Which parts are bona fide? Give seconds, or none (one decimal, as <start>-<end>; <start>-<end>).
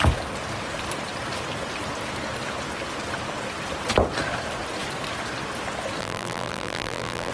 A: 0.0-6.0